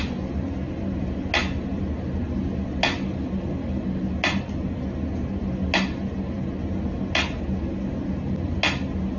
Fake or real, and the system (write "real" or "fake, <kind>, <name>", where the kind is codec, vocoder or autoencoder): real